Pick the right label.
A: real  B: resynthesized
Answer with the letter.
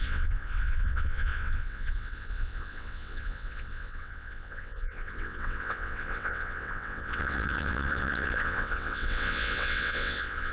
B